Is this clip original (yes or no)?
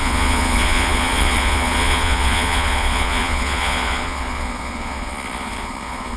no